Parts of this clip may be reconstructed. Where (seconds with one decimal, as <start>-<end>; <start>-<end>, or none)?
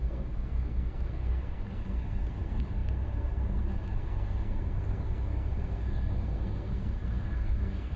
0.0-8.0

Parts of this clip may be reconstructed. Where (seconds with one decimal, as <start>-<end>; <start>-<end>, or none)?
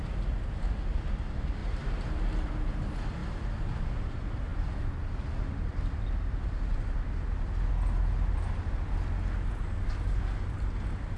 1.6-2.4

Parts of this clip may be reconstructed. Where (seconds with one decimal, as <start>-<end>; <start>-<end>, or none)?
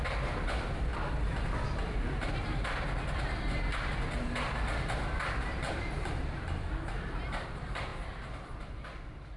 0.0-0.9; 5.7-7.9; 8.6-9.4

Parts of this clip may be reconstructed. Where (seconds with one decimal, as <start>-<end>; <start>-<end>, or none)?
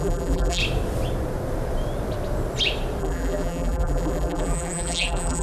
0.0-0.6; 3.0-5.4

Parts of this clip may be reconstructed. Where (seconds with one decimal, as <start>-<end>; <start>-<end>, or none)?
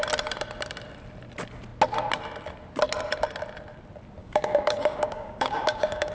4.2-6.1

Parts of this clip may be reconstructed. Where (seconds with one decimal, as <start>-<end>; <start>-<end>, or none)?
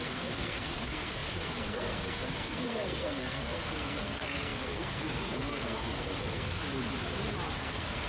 0.0-6.6; 7.5-8.1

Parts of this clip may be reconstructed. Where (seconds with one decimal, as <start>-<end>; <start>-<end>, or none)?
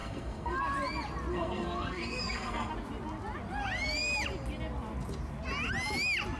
0.0-0.6; 1.3-2.7